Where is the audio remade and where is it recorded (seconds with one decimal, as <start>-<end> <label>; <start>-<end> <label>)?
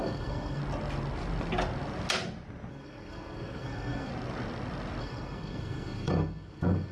0.0-0.6 remade; 0.6-2.7 recorded; 2.7-4.1 remade; 4.1-5.0 recorded; 5.0-6.9 remade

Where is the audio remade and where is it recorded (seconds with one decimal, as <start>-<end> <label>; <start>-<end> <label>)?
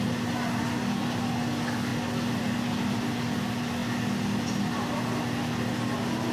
0.0-6.3 recorded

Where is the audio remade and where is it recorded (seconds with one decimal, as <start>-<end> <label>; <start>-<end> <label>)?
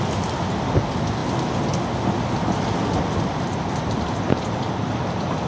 0.0-5.5 recorded